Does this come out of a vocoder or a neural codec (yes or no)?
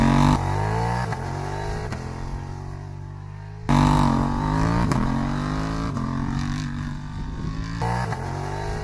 no